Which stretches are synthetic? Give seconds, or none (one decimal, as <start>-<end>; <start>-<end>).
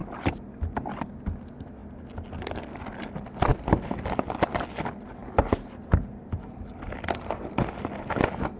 none